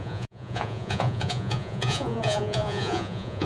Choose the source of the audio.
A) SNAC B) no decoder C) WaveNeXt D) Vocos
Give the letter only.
D